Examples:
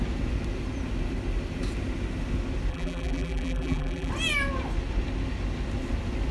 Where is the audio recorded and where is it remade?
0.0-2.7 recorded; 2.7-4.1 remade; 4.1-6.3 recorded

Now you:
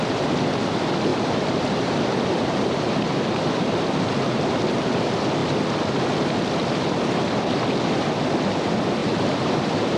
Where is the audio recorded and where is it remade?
0.0-1.1 recorded; 1.1-4.0 remade; 4.0-9.0 recorded; 9.0-10.0 remade

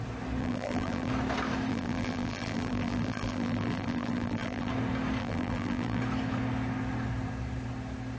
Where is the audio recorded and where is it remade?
0.0-0.4 recorded; 0.4-1.1 remade; 1.1-1.7 recorded; 1.7-4.7 remade; 4.7-5.2 recorded; 5.2-6.0 remade; 6.0-8.2 recorded

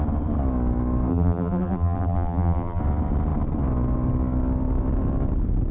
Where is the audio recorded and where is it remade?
0.0-1.1 recorded; 1.1-2.8 remade; 2.8-5.7 recorded

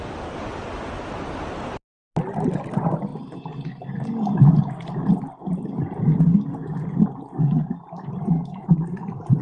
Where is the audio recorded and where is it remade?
0.0-9.4 recorded

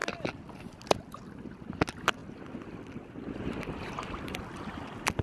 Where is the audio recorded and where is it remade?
0.0-5.2 recorded